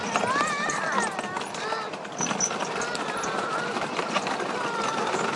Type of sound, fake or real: real